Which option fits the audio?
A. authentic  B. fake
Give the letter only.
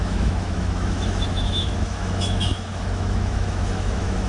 B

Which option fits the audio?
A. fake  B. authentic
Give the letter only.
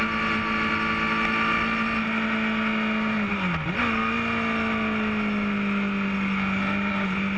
B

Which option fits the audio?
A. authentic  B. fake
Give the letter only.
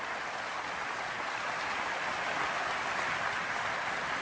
A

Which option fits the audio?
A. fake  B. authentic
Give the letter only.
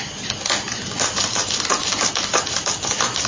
B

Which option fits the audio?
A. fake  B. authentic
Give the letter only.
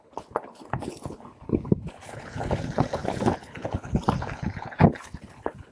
A